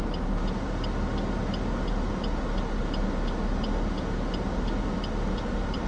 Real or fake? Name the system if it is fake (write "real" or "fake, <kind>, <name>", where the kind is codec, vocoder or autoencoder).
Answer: real